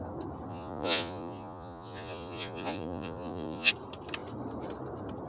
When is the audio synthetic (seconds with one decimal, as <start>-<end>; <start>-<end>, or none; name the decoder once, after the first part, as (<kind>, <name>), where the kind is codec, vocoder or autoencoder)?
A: 0.5-3.7 (vocoder, Vocos)